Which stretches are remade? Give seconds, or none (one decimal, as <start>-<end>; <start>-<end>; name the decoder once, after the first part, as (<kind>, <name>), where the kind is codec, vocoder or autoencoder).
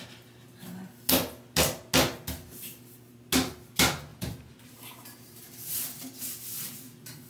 4.1-5.7 (vocoder, BigVGAN v2)